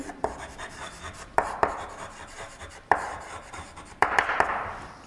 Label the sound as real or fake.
fake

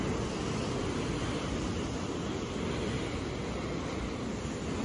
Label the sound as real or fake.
real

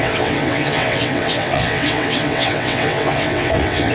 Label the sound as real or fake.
fake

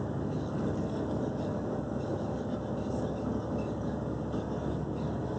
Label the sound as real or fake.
fake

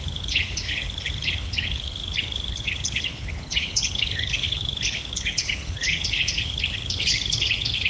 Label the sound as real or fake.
fake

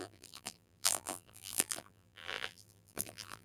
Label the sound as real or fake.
fake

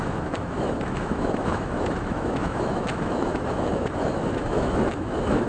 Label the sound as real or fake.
fake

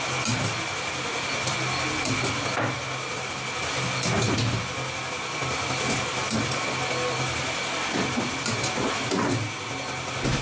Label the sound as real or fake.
real